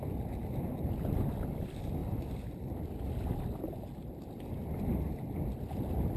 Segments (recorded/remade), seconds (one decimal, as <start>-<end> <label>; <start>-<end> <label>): 0.0-0.4 recorded; 0.4-0.9 remade; 0.9-6.2 recorded